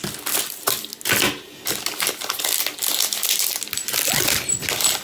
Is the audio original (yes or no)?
yes